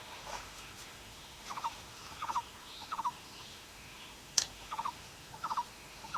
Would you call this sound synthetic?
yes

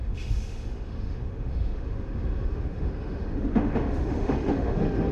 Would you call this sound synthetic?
yes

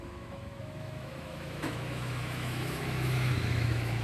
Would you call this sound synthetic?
yes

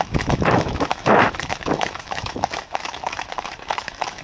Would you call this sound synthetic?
yes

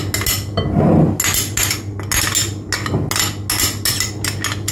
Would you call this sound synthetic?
no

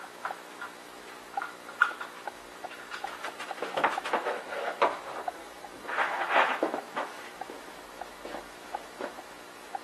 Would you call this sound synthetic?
yes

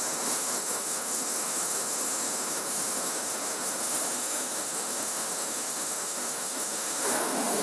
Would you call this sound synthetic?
yes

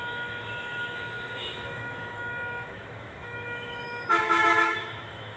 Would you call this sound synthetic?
yes